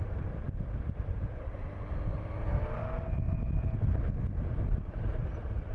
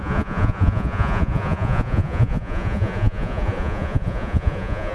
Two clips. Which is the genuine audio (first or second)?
first